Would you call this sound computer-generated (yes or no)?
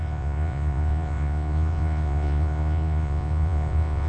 yes